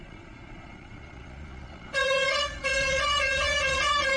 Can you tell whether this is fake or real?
fake